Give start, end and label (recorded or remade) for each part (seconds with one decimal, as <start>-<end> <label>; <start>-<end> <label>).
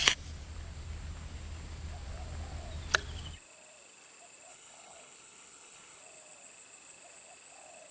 0.0-4.5 recorded; 4.5-6.0 remade; 6.0-7.9 recorded